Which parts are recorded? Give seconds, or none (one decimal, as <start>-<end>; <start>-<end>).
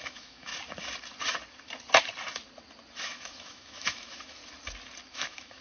0.5-3.0; 4.4-5.1